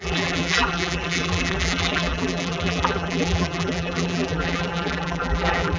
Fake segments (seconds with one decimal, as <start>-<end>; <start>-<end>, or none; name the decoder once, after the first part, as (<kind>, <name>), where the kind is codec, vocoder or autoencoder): 0.0-5.8 (vocoder, BigVGAN v2)